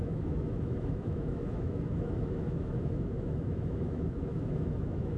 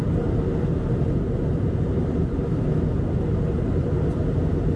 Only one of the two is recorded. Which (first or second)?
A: second